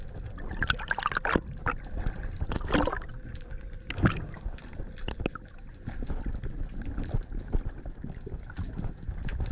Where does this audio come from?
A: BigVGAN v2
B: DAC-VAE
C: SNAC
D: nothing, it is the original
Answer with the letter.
D